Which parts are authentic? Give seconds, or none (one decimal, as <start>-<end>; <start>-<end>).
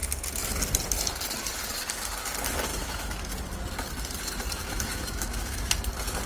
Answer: 0.0-2.7; 3.3-4.6; 5.7-6.3